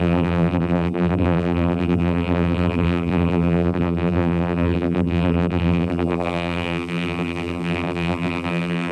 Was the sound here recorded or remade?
remade